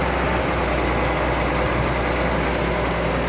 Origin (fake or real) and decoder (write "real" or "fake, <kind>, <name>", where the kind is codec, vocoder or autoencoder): real